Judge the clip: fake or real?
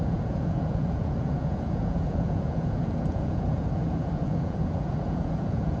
fake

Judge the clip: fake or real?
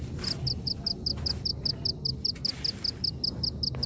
real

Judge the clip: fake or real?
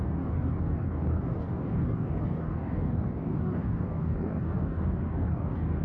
fake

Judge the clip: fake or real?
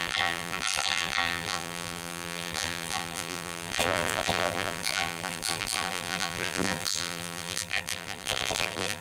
fake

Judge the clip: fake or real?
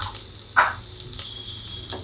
real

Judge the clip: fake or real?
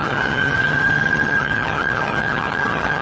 fake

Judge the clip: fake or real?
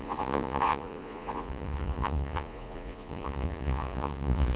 fake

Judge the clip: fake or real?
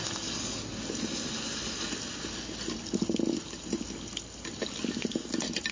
real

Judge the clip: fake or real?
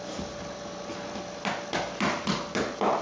real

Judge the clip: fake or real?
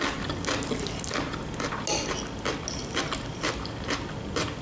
real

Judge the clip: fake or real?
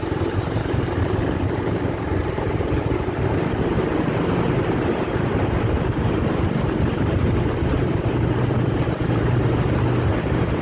fake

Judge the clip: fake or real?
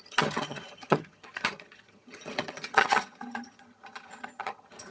fake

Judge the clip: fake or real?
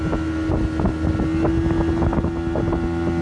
real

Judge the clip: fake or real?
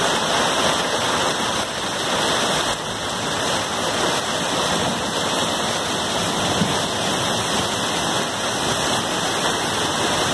real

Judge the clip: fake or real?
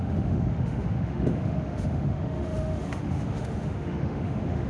fake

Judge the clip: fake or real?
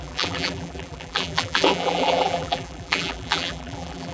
fake